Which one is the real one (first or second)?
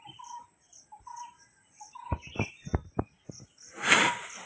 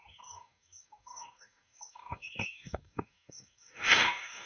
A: first